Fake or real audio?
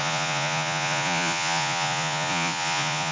fake